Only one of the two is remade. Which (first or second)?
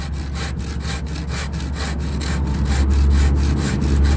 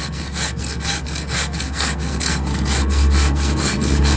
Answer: second